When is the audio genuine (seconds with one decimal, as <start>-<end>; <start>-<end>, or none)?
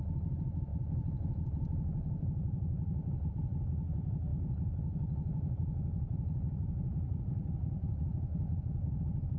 0.0-0.7; 3.3-4.3; 9.0-9.4